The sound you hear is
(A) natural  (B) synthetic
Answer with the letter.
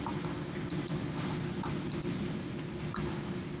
A